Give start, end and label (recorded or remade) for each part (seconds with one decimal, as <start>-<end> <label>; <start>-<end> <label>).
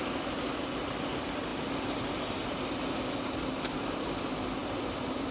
0.0-5.3 recorded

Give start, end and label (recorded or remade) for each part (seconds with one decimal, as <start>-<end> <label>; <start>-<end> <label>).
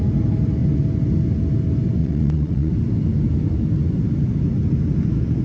0.0-2.0 recorded; 2.0-2.7 remade; 2.7-5.4 recorded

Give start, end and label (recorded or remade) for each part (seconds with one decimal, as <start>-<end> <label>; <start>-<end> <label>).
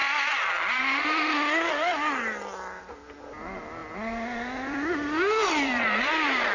0.0-2.8 remade; 2.8-3.8 recorded; 3.8-6.5 remade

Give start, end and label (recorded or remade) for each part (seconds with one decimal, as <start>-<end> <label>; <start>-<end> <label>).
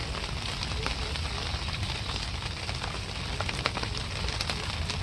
0.0-5.0 recorded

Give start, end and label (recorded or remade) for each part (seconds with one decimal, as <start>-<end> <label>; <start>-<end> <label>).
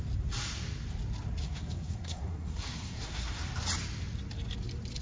0.0-1.4 recorded; 1.4-3.4 remade; 3.4-5.0 recorded